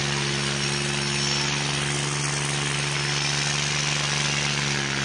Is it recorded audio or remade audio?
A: recorded